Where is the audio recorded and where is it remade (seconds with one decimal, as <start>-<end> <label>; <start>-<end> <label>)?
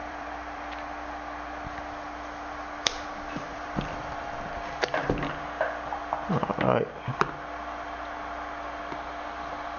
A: 0.0-0.7 remade; 0.7-3.5 recorded; 3.5-4.5 remade; 4.5-9.8 recorded